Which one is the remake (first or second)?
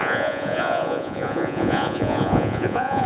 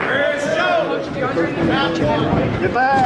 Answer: first